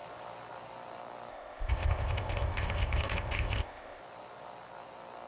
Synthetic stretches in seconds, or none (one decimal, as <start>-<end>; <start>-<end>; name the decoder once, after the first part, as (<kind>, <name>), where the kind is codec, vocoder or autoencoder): 1.3-4.0 (codec, ZipCodec)